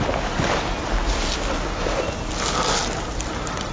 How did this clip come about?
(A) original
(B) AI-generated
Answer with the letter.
A